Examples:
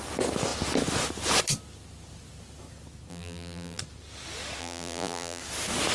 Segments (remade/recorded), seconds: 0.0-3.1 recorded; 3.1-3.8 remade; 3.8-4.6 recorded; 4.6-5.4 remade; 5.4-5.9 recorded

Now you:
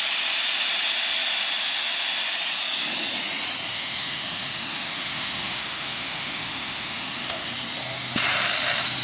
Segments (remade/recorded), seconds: 0.0-3.7 recorded; 3.7-7.5 remade; 7.5-9.0 recorded

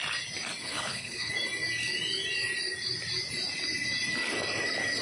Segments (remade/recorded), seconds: 0.0-0.6 recorded; 0.6-1.3 remade; 1.3-5.0 recorded

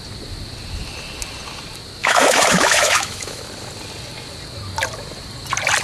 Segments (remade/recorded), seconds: 0.0-2.0 recorded; 2.0-3.4 remade; 3.4-5.8 recorded